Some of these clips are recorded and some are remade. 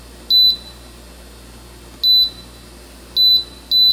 recorded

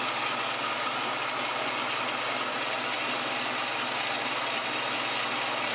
recorded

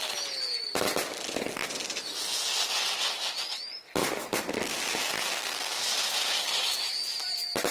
recorded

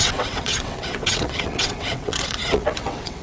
remade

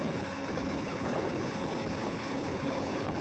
remade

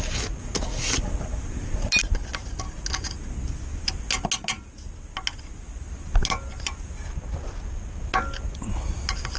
recorded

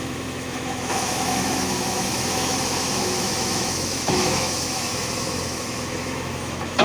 remade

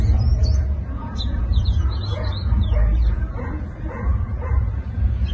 remade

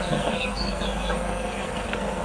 remade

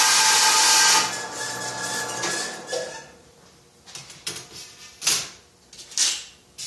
recorded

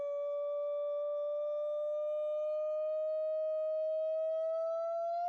recorded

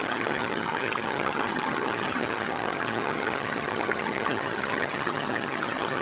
remade